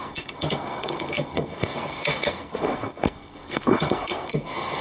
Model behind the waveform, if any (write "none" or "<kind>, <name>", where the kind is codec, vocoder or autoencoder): codec, SNAC